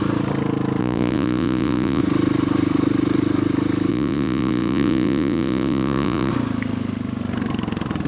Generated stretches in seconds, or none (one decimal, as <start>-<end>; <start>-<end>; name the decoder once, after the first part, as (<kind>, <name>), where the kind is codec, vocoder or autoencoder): 0.8-2.0 (vocoder, Vocos); 3.9-6.3